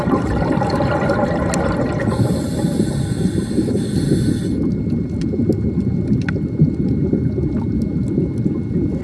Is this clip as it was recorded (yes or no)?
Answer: yes